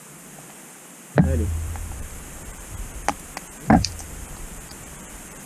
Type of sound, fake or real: fake